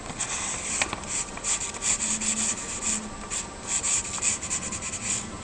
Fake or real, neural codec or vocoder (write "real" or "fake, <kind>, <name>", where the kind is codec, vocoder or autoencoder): real